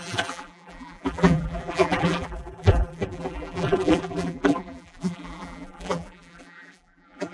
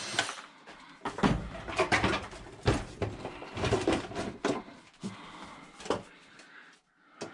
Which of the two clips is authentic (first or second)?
second